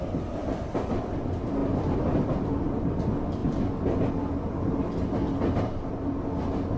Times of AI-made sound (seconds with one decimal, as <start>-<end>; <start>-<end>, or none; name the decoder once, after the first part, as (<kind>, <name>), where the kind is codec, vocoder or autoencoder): 1.6-2.9 (vocoder, BigVGAN v2)